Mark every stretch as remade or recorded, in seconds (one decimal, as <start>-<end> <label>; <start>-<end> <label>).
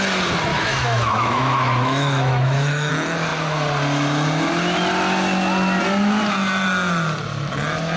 0.0-0.5 recorded; 0.5-2.9 remade; 2.9-8.0 recorded